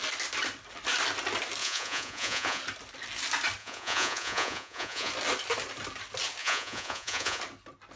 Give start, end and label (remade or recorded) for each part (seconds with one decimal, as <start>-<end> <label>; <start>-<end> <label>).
0.0-1.6 recorded; 1.6-2.6 remade; 2.6-3.6 recorded; 3.6-5.1 remade; 5.1-6.4 recorded; 6.4-7.4 remade; 7.4-8.0 recorded